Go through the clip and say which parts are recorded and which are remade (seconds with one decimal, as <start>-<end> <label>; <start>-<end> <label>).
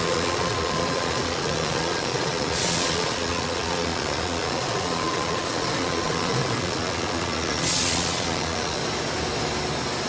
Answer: 0.0-8.8 remade; 8.8-10.1 recorded